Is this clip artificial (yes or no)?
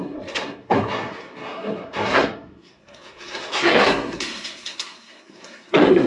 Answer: yes